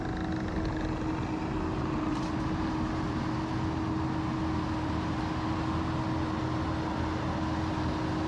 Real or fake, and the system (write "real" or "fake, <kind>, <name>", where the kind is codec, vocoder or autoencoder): real